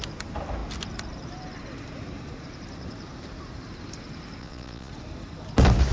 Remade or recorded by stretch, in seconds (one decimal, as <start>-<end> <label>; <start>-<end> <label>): 0.0-4.4 recorded; 4.4-4.9 remade; 4.9-5.9 recorded